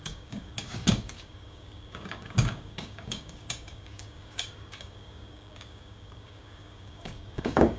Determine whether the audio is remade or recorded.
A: remade